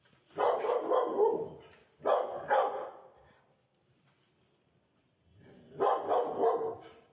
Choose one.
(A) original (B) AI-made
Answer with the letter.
A